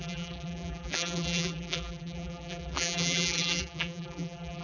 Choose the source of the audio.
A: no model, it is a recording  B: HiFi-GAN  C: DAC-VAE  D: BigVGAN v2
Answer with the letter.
D